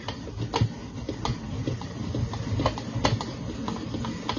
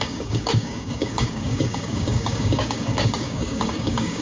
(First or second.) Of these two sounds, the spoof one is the second